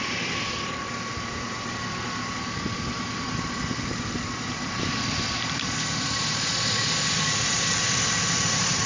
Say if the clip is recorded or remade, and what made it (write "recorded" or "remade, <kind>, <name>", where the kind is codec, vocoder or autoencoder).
recorded